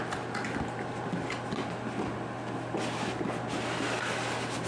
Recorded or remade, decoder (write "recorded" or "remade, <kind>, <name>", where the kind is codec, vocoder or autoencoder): recorded